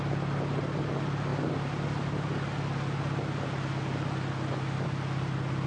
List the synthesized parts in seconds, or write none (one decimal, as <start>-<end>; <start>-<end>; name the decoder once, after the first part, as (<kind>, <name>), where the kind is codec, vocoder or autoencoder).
none